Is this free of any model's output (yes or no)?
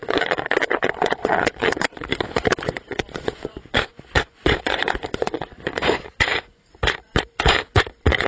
no